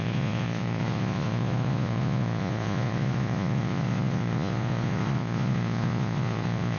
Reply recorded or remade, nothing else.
remade